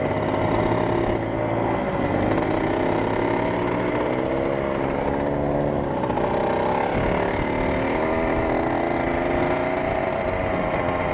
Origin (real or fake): real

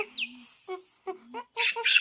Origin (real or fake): real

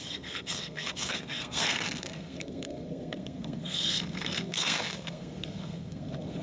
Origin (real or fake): fake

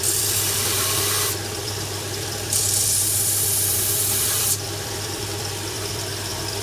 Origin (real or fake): fake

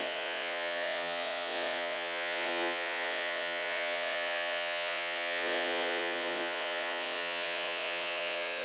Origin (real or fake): fake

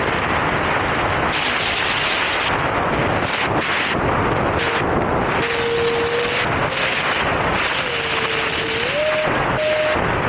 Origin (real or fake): real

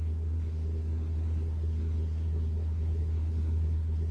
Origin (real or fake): fake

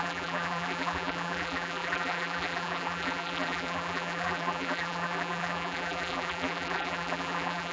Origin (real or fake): fake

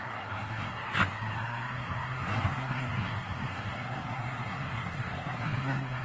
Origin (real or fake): fake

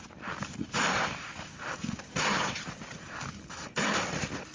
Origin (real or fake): real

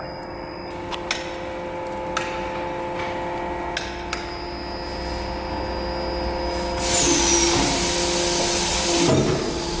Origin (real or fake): real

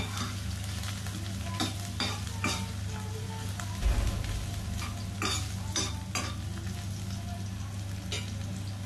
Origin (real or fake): real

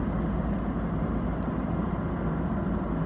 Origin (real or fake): real